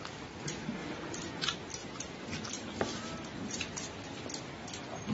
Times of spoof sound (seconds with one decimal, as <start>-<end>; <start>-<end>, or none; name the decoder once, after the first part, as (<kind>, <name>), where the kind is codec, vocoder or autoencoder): 0.0-0.8 (vocoder, BigVGAN v2); 1.4-1.8